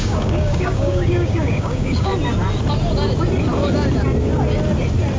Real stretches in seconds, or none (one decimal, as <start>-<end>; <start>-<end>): 2.1-5.2

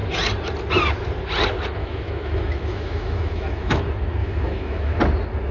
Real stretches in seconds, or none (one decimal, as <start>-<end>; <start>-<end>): 0.0-1.8; 3.8-4.2; 5.0-5.5

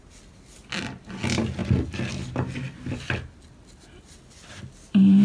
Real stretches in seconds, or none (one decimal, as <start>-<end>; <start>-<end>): 0.0-5.2

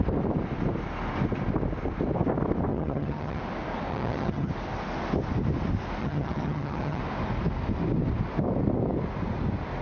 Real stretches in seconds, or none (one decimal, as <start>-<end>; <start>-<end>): 0.0-2.7; 3.4-3.9; 4.5-6.0; 7.0-9.8

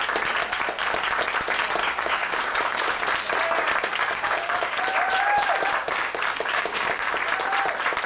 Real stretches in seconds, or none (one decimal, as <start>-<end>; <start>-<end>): 0.0-1.8; 3.0-3.9; 4.8-5.8; 7.1-8.1

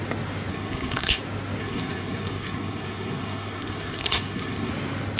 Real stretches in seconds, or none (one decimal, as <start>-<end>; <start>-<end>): 0.0-0.5; 1.2-1.6; 4.7-5.2

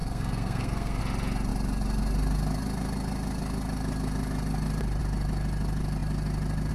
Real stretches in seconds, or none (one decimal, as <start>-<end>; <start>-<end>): 1.0-6.7